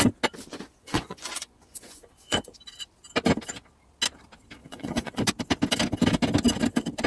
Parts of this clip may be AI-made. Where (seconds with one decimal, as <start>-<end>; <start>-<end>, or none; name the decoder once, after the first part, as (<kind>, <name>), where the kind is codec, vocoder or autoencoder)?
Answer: 0.5-2.5 (vocoder, Vocos); 4.6-5.2